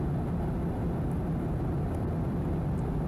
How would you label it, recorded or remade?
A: recorded